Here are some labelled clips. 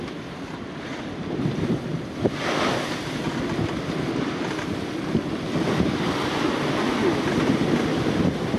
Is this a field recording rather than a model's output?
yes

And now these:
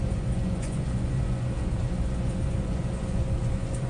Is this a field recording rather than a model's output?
no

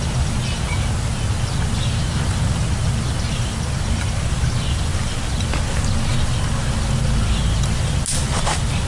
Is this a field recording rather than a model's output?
yes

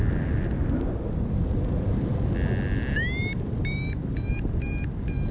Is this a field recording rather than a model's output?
yes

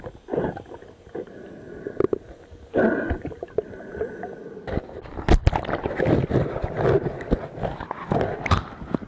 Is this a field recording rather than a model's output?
yes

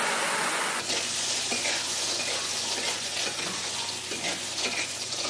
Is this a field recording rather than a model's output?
no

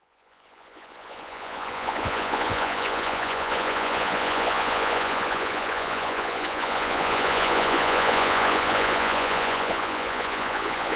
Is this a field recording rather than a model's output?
no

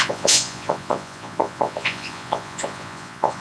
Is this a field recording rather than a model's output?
no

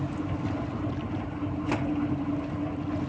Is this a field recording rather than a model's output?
yes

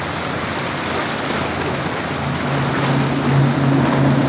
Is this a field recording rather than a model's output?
yes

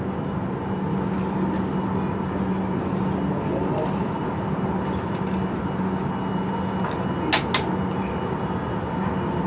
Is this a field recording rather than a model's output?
yes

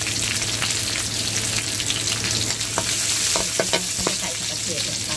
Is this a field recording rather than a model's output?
yes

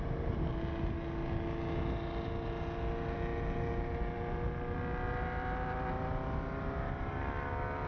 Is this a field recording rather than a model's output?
yes